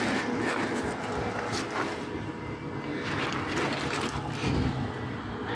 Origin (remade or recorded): recorded